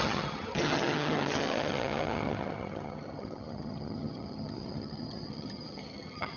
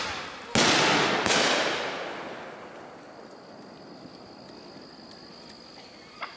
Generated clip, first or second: first